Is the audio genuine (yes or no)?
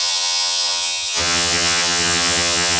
no